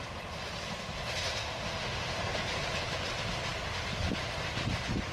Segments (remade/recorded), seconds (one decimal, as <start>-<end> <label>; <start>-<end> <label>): 0.0-1.4 recorded; 1.4-2.2 remade; 2.2-5.1 recorded